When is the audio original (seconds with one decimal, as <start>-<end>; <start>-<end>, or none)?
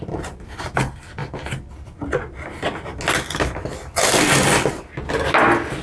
0.0-5.8